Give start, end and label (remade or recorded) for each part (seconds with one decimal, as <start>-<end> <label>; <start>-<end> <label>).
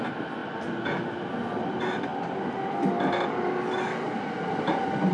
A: 0.0-0.4 remade; 0.4-1.6 recorded; 1.6-5.1 remade